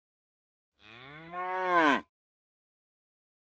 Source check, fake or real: fake